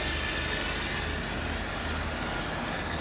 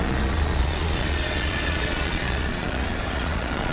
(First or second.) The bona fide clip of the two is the first